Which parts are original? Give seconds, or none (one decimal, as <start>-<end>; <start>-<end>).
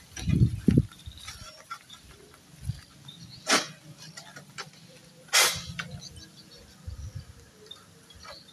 0.0-8.5